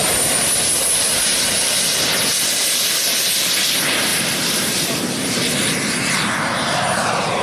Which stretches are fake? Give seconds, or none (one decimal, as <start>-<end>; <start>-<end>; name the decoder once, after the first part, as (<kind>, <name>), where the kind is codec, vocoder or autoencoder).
4.1-5.1 (vocoder, BigVGAN v2)